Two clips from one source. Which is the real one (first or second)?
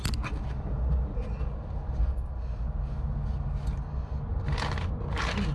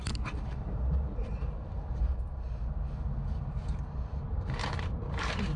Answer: first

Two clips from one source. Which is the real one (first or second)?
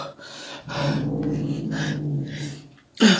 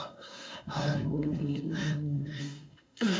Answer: first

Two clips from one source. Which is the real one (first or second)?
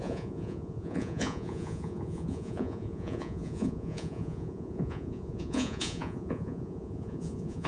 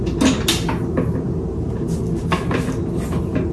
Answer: second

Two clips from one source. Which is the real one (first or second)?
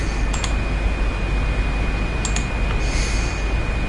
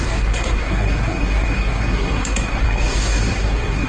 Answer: first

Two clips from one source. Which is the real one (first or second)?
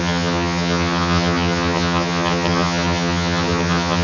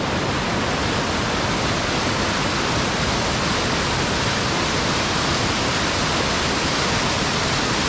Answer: second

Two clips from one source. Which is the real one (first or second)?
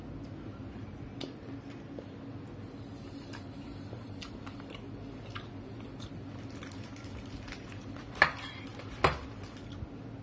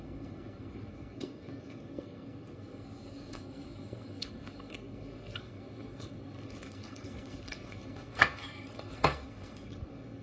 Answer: first